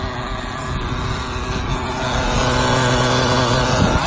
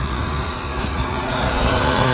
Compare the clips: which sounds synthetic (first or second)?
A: second